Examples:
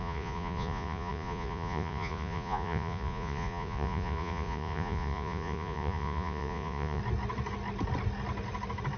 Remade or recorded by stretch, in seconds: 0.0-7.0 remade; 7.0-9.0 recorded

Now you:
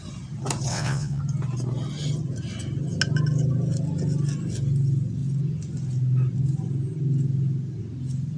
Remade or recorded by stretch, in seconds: 0.0-0.7 recorded; 0.7-1.2 remade; 1.2-8.4 recorded

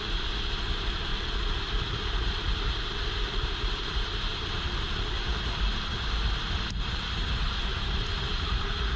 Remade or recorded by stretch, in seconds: 0.0-1.1 remade; 1.1-1.9 recorded; 1.9-9.0 remade

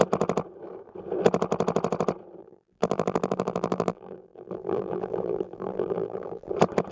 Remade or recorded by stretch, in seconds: 0.0-2.4 recorded; 2.4-6.5 remade; 6.5-6.9 recorded

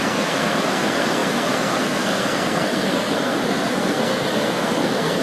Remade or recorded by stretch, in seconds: 0.0-5.2 remade